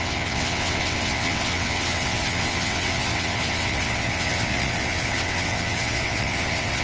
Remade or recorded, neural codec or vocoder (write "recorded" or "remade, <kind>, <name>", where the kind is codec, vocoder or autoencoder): remade, vocoder, WaveNeXt